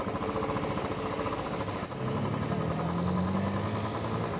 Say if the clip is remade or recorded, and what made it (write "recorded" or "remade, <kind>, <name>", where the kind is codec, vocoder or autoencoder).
recorded